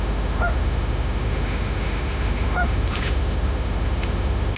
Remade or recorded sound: remade